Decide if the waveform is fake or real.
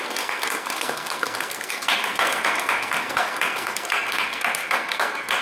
fake